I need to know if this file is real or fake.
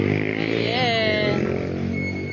real